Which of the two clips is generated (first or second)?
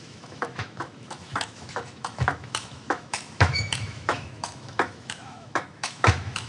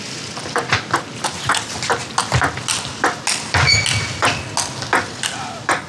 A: first